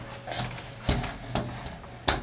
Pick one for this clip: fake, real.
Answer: real